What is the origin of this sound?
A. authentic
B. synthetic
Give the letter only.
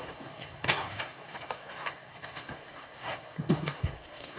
B